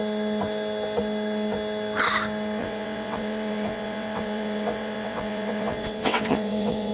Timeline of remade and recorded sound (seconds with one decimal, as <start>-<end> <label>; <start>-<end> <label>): 0.0-2.6 recorded; 2.6-6.9 remade